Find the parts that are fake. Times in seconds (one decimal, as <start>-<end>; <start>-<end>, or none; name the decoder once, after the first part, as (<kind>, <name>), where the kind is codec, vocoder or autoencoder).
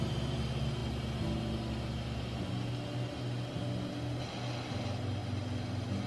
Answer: none